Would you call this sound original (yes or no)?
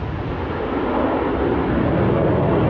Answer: yes